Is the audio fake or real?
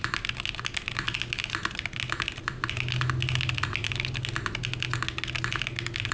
real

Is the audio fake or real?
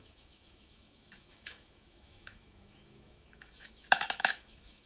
fake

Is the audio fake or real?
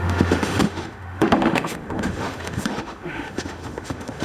fake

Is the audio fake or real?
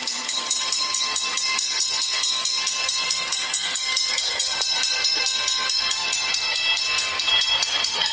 fake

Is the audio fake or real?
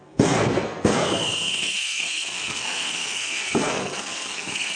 fake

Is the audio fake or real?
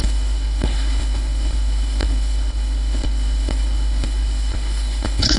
fake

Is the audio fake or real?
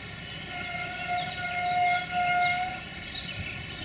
real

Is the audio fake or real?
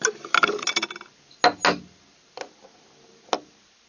real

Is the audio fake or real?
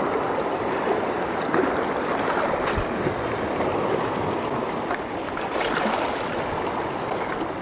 real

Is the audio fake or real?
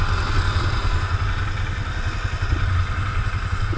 real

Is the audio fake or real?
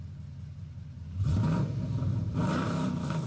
fake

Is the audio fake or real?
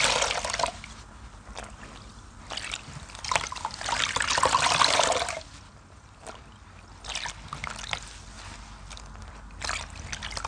real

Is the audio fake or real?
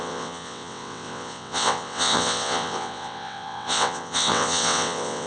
fake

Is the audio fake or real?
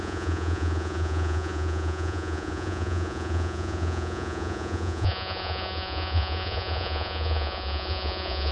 fake